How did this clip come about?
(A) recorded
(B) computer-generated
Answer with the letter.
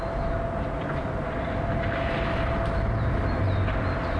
A